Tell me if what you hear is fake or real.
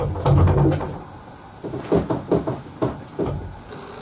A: real